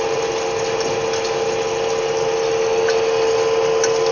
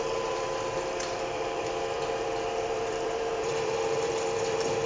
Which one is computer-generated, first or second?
second